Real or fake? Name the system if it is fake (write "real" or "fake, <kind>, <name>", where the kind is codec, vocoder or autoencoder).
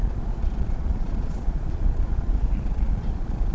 fake, vocoder, Vocos